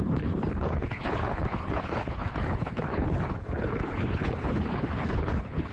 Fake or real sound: fake